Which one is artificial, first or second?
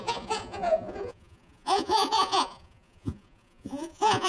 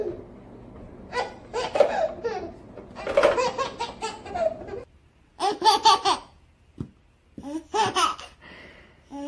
first